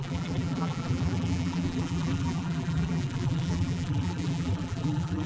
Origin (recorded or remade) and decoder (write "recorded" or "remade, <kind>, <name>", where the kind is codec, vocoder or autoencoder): remade, vocoder, BigVGAN v2